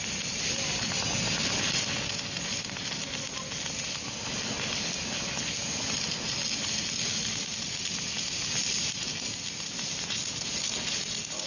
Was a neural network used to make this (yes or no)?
no